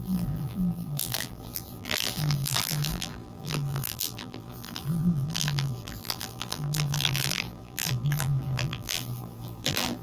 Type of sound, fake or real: fake